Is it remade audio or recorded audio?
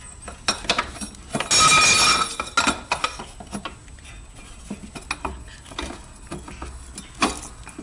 recorded